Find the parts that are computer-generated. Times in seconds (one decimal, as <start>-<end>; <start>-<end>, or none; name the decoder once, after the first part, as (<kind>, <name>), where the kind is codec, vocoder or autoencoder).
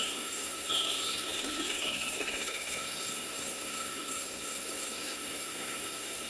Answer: 0.0-6.3 (codec, SNAC)